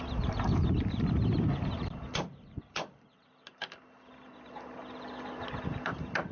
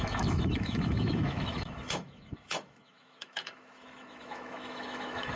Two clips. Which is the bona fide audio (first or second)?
first